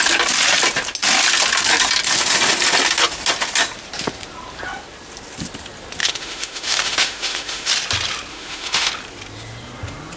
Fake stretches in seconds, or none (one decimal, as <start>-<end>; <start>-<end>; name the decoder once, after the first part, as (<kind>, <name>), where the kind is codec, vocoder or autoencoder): 6.0-7.7 (autoencoder, DAC-VAE); 8.3-8.9